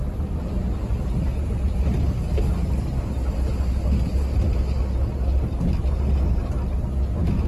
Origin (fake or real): real